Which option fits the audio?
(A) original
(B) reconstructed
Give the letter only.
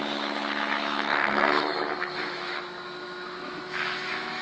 B